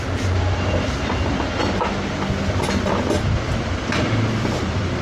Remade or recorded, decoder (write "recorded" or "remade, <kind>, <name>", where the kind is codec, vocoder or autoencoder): recorded